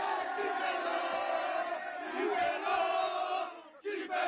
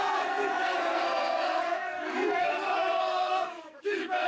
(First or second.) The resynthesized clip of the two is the second